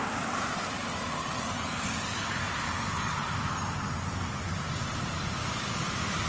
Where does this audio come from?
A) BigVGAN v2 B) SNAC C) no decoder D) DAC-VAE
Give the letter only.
C